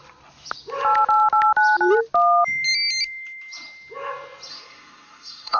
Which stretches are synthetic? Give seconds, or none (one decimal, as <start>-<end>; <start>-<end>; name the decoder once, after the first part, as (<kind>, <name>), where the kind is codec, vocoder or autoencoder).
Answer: 4.5-5.6 (codec, SNAC)